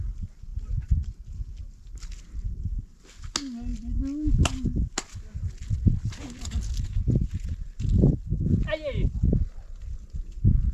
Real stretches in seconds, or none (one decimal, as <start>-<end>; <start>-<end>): 0.0-10.7